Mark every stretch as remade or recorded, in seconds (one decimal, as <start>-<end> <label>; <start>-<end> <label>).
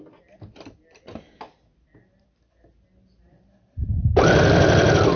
0.0-5.2 recorded